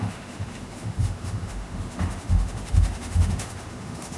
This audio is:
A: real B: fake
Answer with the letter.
B